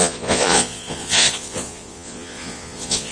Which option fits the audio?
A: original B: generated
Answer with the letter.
B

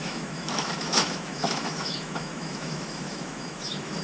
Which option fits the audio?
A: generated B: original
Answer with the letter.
A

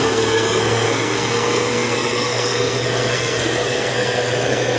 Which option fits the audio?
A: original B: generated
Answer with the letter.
B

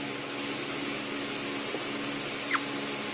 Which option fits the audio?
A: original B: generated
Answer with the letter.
A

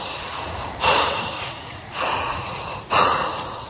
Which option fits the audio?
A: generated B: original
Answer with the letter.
A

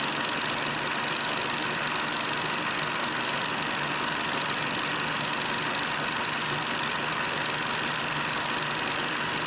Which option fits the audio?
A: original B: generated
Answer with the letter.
A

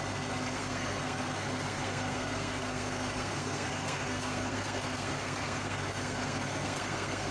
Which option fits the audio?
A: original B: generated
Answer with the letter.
B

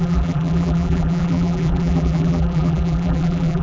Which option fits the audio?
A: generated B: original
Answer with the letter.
A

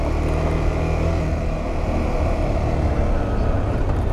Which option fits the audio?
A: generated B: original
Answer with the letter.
B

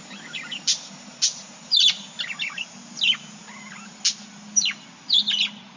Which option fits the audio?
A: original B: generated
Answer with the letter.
A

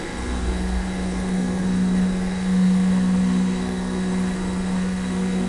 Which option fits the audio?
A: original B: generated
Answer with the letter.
B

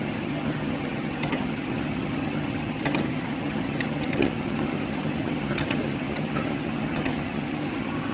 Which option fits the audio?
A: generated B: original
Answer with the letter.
A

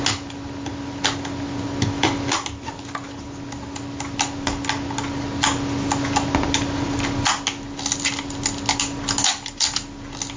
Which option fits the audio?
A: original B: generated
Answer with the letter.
A